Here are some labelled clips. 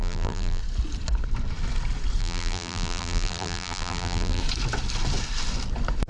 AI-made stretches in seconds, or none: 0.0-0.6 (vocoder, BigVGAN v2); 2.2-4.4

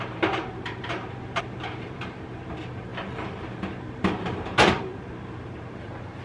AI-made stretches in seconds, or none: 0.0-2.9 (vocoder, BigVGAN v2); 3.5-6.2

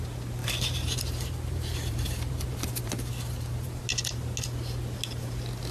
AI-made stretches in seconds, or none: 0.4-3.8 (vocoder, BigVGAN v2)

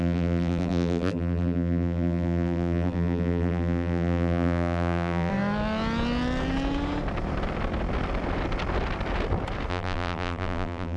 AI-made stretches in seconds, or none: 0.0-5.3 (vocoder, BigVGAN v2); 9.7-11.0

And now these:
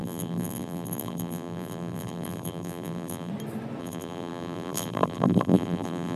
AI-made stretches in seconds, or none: 0.0-3.3 (vocoder, BigVGAN v2); 3.8-6.2

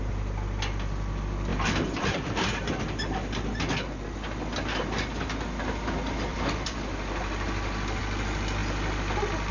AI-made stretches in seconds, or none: 1.5-2.7 (vocoder, BigVGAN v2); 6.3-8.0; 8.6-9.5

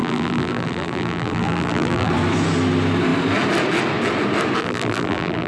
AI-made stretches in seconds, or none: 0.0-2.1 (vocoder, BigVGAN v2); 4.6-5.5

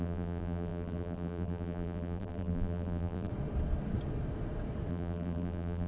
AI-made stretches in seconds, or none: 0.0-3.3 (vocoder, BigVGAN v2); 4.9-5.9